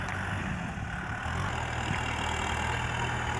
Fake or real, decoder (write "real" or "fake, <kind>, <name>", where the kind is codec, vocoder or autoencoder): real